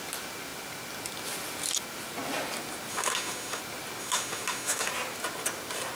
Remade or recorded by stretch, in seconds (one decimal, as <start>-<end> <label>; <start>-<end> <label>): 0.0-2.9 recorded; 2.9-3.6 remade; 3.6-4.0 recorded; 4.0-4.9 remade; 4.9-6.0 recorded